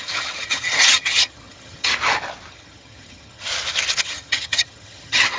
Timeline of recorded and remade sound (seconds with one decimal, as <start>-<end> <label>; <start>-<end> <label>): 0.0-1.9 remade; 1.9-2.5 recorded; 2.5-3.5 remade; 3.5-4.0 recorded; 4.0-5.4 remade